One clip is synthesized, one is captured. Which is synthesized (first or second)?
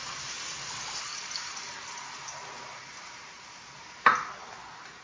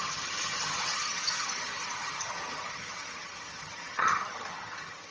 second